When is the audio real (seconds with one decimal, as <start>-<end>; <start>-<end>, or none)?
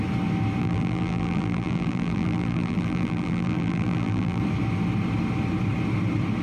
0.0-0.6; 4.4-6.4